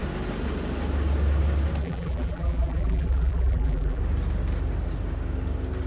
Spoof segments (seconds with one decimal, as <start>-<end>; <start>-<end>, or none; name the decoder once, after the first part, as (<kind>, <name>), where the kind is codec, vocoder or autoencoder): 1.8-4.0 (vocoder, BigVGAN v2)